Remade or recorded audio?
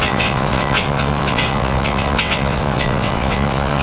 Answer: remade